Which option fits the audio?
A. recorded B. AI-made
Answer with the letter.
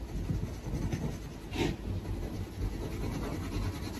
A